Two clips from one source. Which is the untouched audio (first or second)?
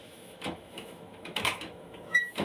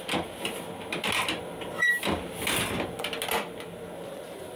second